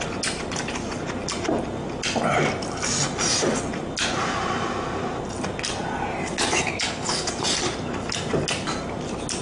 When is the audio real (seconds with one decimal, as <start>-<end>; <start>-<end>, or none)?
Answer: 0.0-6.6; 7.3-9.4